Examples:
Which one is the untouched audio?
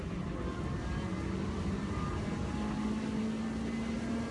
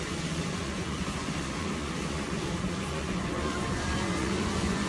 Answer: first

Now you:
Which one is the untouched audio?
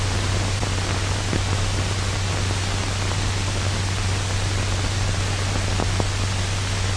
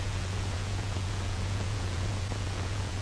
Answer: first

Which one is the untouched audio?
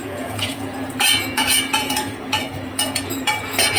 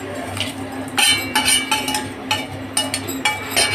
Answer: second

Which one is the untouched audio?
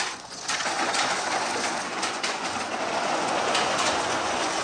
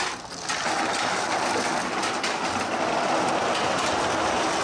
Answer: second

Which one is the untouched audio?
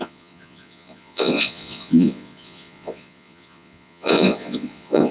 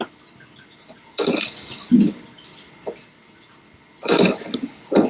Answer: second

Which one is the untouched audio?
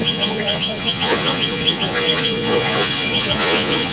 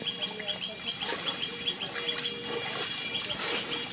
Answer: second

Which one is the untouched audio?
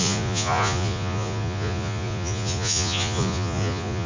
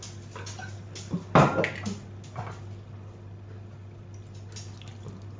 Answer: second